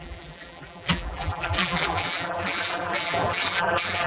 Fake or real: fake